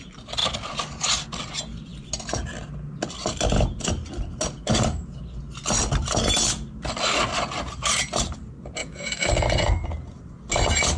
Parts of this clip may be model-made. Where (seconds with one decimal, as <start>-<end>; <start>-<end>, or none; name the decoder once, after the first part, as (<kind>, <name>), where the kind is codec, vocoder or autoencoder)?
8.8-9.3 (autoencoder, DAC-VAE)